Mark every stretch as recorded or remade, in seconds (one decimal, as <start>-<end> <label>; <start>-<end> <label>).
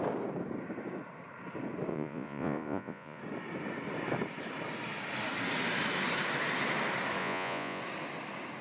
0.0-1.9 recorded; 1.9-3.2 remade; 3.2-7.2 recorded; 7.2-7.8 remade; 7.8-8.6 recorded